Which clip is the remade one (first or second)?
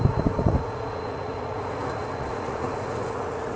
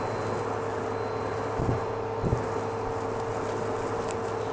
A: first